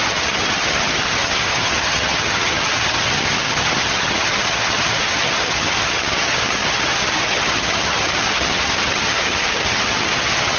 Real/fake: fake